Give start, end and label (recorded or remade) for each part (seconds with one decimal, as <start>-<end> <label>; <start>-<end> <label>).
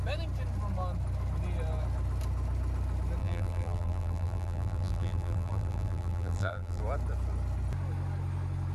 0.0-3.2 recorded; 3.2-6.8 remade; 6.8-8.7 recorded